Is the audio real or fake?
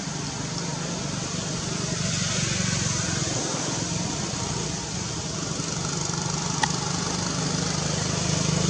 real